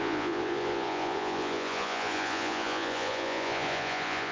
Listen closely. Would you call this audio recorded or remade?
remade